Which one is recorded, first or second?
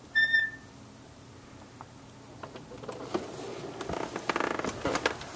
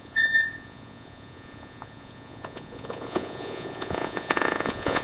first